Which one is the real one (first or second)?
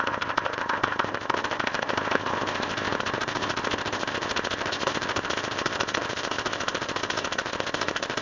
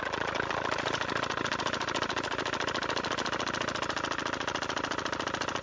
second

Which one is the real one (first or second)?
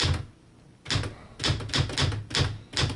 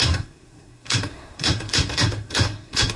first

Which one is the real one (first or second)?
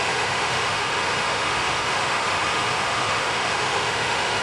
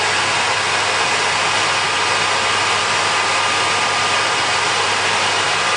second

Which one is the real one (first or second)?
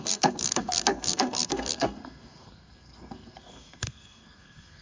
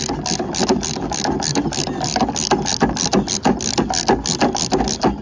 second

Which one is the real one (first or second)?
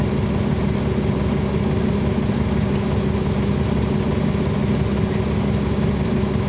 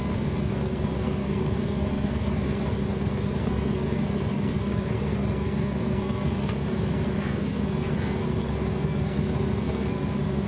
first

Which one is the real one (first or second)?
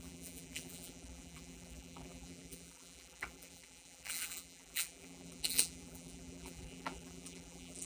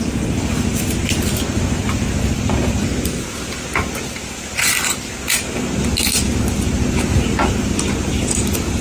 second